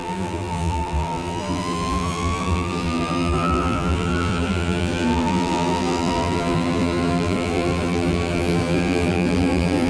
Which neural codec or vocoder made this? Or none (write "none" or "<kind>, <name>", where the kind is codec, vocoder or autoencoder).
vocoder, BigVGAN v2